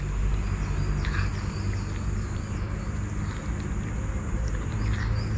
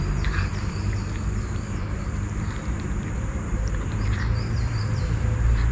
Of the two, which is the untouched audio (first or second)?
first